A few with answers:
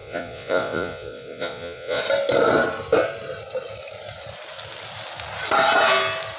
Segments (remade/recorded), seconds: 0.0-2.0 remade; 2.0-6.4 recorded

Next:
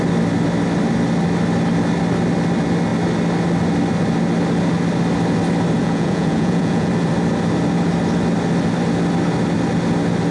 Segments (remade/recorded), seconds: 0.0-5.8 recorded; 5.8-6.9 remade; 6.9-10.3 recorded

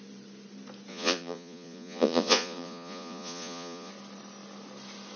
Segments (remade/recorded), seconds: 0.0-0.9 recorded; 0.9-3.9 remade; 3.9-5.2 recorded

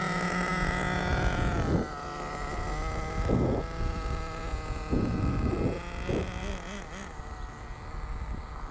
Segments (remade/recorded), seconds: 0.0-4.4 recorded; 4.4-5.2 remade; 5.2-8.7 recorded

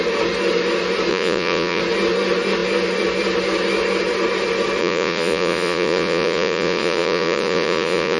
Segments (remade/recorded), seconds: 0.0-1.1 recorded; 1.1-1.8 remade; 1.8-4.8 recorded; 4.8-8.2 remade

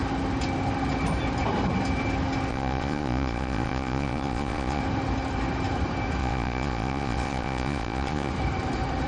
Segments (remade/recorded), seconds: 0.0-2.5 recorded; 2.5-4.8 remade; 4.8-6.2 recorded; 6.2-8.3 remade; 8.3-9.1 recorded

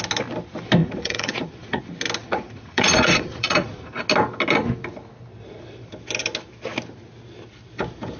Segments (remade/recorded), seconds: 0.0-0.8 recorded; 0.8-1.8 remade; 1.8-2.2 recorded; 2.2-4.0 remade; 4.0-8.2 recorded

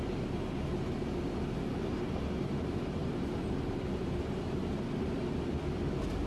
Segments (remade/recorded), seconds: 0.0-6.3 recorded